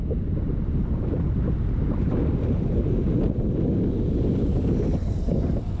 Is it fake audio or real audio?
real